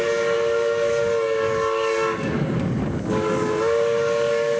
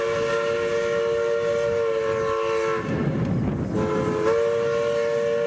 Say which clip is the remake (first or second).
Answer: first